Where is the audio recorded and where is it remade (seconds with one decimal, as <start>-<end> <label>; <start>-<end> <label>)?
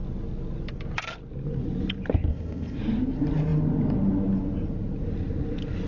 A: 0.0-2.3 recorded; 2.3-2.8 remade; 2.8-5.9 recorded